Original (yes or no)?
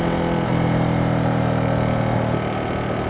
yes